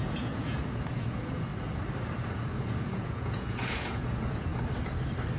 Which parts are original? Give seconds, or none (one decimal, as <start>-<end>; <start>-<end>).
1.5-2.6; 4.5-5.4